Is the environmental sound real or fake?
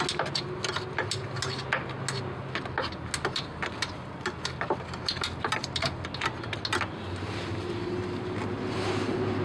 real